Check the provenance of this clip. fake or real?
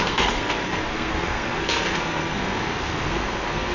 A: fake